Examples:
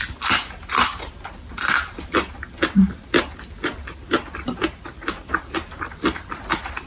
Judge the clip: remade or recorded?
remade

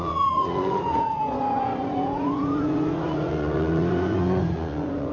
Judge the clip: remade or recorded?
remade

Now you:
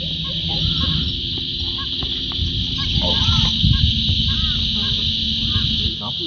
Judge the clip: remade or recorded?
recorded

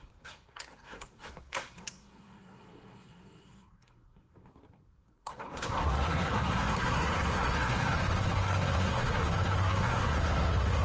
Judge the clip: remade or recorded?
remade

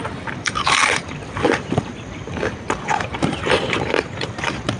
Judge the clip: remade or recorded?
remade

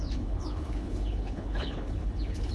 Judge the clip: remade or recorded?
remade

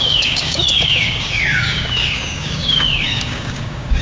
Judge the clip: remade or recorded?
remade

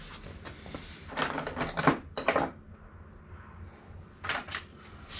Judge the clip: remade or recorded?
recorded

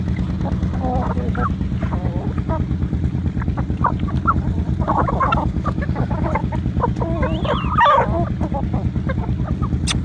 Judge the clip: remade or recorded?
recorded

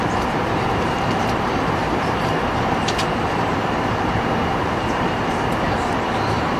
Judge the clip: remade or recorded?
remade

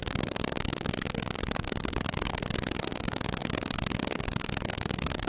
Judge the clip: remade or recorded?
remade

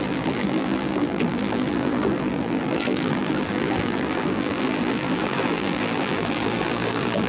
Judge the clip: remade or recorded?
remade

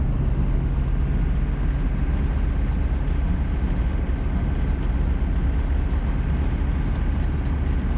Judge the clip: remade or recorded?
recorded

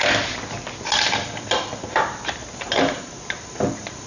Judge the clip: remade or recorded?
recorded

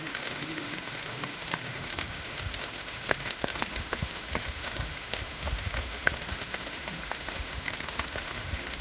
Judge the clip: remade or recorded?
remade